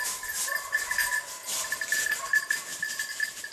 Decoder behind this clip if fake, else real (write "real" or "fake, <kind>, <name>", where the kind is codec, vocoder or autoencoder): real